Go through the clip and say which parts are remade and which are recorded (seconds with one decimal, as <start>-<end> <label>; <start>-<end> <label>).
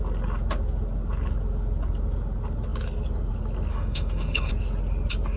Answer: 0.0-3.7 recorded; 3.7-4.5 remade; 4.5-5.4 recorded